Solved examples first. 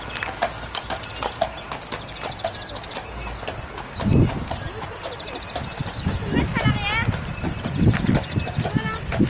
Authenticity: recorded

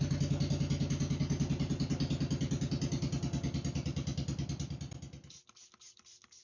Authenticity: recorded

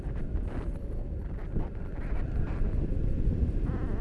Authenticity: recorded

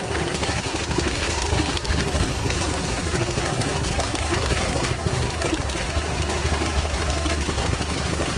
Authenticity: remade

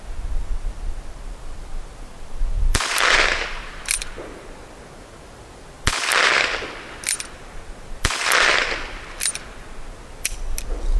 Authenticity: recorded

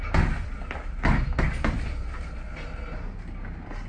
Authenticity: recorded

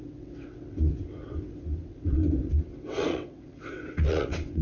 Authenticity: remade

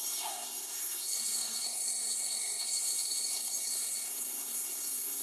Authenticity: remade